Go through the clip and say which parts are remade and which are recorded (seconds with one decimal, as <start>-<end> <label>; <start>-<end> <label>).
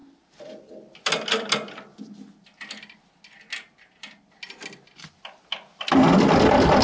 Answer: 0.0-6.8 recorded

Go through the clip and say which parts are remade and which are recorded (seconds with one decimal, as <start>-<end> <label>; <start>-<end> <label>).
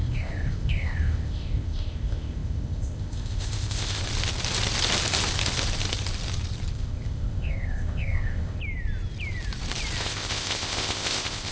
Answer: 0.0-4.0 remade; 4.0-6.7 recorded; 6.7-8.6 remade; 8.6-10.0 recorded; 10.0-11.5 remade